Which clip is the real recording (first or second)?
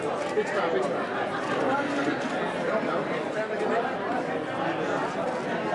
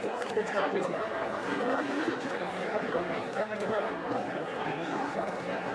first